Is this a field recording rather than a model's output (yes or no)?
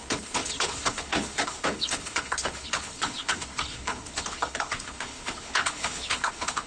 no